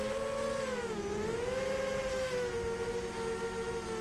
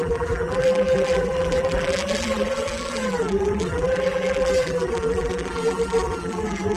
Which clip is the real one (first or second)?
first